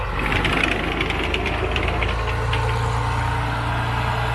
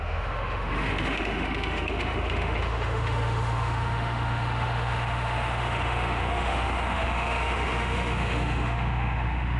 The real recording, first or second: first